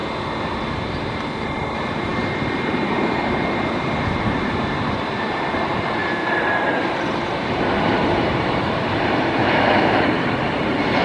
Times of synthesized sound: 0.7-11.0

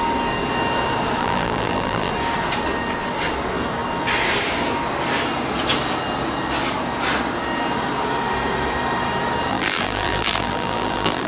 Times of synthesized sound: 1.2-2.1; 9.5-11.3

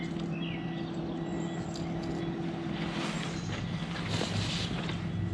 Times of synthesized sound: none

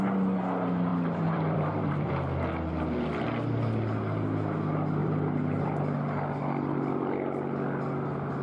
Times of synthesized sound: 0.9-2.1; 5.0-5.8

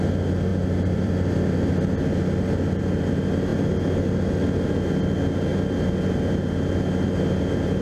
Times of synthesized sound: 0.5-1.5

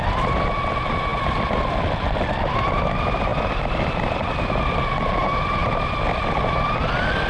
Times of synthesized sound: 3.3-4.4; 5.6-6.6

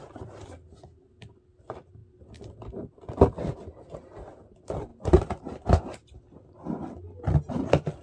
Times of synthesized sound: 2.0-2.9; 4.9-5.4